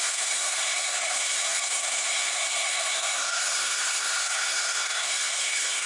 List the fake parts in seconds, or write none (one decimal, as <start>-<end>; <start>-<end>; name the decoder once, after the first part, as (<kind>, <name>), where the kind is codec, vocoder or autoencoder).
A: 0.0-5.9 (codec, SNAC)